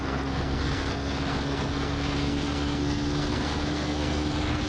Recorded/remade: remade